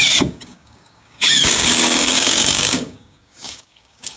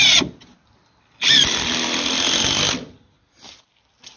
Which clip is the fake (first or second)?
first